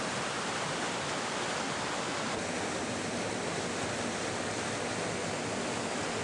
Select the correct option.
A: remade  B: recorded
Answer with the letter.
B